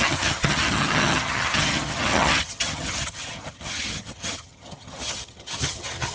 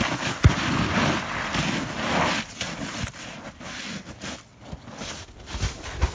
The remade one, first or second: first